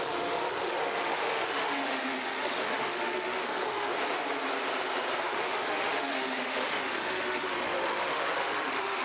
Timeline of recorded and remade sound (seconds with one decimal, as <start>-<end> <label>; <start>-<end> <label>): 0.0-3.9 remade; 3.9-5.2 recorded; 5.2-9.0 remade